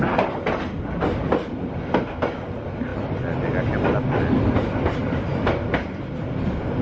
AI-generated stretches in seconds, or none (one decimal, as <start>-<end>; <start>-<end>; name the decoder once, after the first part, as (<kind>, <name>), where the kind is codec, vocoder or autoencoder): none